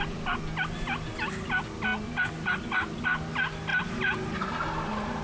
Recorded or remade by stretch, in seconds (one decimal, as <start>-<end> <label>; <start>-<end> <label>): 0.0-5.2 recorded